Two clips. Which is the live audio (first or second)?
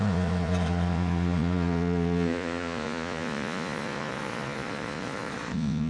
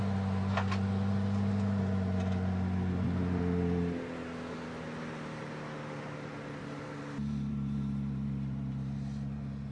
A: second